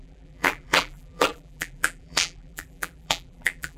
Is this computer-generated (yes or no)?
yes